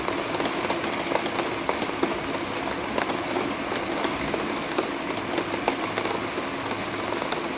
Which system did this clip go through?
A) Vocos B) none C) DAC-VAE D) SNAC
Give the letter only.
B